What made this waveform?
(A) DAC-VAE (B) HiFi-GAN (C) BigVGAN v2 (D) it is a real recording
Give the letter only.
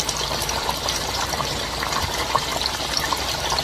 C